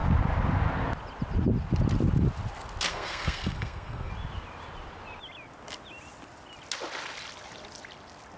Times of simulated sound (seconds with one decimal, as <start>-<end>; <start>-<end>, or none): 2.9-4.1